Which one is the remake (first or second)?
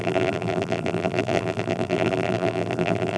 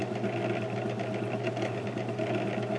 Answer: first